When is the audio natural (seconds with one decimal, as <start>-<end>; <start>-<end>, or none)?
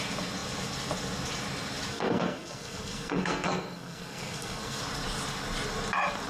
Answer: 0.0-1.9; 4.8-6.3